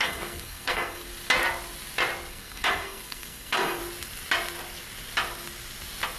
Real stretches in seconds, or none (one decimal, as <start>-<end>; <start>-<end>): 1.1-2.3; 3.8-6.2